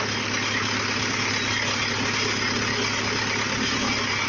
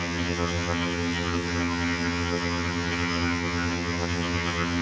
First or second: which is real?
first